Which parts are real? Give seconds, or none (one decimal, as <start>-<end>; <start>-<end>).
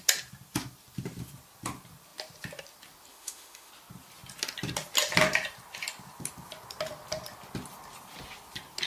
0.0-3.1; 3.7-8.9